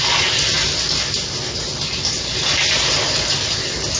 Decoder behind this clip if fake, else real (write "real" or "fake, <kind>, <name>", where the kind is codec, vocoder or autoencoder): real